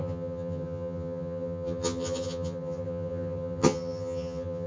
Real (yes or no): no